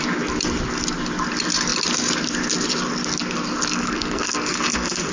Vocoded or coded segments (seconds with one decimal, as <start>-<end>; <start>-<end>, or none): 3.7-5.1